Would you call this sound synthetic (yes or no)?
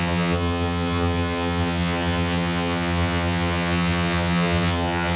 yes